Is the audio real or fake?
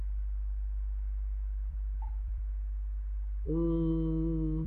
fake